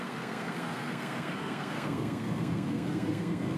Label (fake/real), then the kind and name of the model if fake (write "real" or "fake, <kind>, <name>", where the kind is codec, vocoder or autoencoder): fake, codec, SNAC